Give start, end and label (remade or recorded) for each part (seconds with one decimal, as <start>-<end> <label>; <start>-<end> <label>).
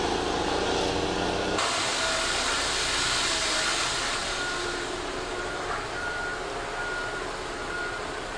0.0-4.2 recorded; 4.2-6.6 remade; 6.6-8.4 recorded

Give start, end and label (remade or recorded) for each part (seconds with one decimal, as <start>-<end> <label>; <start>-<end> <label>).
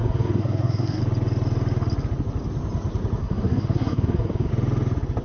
0.0-1.0 remade; 1.0-3.2 recorded; 3.2-4.5 remade; 4.5-5.2 recorded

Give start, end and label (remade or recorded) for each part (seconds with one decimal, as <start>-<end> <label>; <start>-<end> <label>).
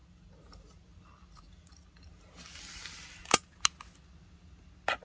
0.0-5.0 recorded